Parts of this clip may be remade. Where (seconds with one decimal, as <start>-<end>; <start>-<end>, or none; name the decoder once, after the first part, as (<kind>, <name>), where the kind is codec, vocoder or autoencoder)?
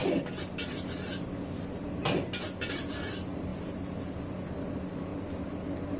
none